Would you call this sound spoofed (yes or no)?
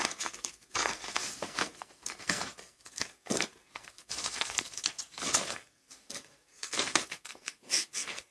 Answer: yes